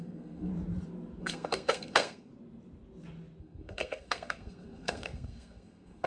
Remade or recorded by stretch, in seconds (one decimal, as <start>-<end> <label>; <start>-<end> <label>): 0.0-0.5 remade; 0.5-1.2 recorded; 1.2-2.3 remade; 2.3-3.4 recorded; 3.4-6.1 remade